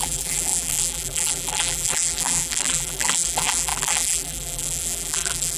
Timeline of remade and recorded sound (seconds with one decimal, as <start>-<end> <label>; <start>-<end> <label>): 0.0-5.6 remade